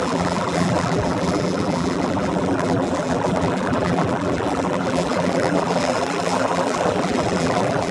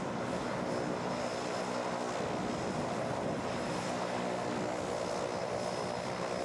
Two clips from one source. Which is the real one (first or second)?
second